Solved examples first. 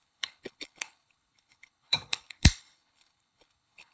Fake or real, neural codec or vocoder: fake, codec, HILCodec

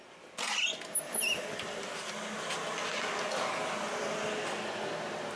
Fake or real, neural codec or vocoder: real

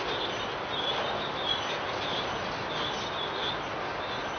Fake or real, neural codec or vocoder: real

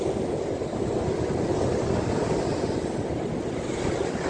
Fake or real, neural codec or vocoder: real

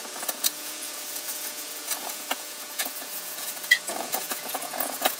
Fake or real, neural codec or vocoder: fake, vocoder, Vocos